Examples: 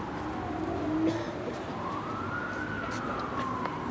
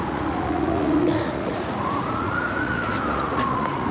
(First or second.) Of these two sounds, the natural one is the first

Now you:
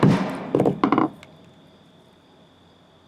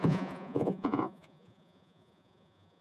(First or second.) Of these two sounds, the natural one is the first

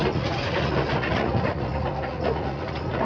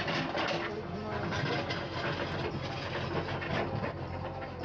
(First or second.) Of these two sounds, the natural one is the second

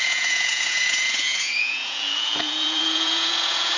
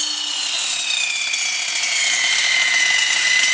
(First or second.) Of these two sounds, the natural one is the second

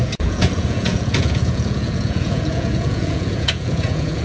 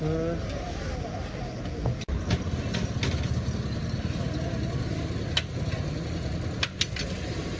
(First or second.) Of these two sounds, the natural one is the second